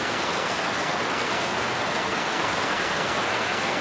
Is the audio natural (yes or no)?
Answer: no